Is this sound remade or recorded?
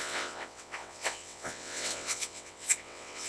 remade